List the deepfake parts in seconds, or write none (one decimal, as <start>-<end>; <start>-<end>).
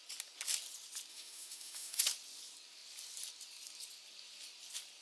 1.1-2.0